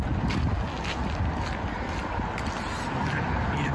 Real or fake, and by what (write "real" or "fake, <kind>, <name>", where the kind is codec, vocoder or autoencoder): real